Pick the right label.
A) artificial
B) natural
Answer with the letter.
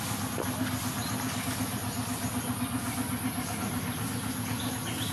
B